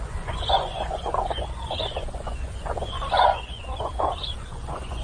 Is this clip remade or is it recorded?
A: remade